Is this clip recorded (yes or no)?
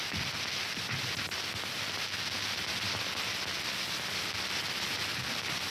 yes